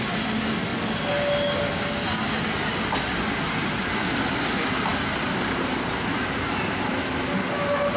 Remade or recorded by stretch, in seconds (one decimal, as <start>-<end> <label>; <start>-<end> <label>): 0.0-8.0 recorded